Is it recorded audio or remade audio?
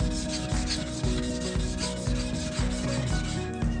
recorded